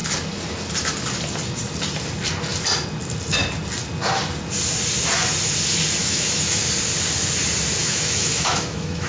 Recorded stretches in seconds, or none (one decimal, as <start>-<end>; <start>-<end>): 0.0-6.0; 6.6-7.8